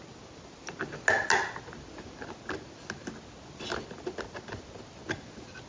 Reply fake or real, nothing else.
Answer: real